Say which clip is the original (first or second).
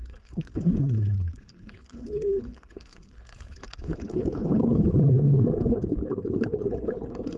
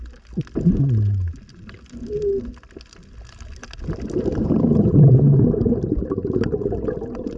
second